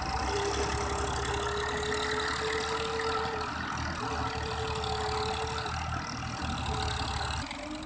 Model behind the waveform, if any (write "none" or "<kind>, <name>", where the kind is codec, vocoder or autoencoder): none